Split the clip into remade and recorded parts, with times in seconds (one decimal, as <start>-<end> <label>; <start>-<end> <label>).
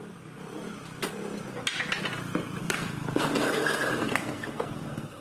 0.0-2.6 recorded; 2.6-5.2 remade